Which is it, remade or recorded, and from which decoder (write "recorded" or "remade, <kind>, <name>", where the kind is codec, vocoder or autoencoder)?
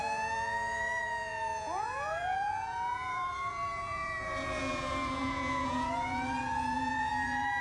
remade, vocoder, Vocos